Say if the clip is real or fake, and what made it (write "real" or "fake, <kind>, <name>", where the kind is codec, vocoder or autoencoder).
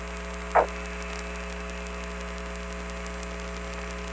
real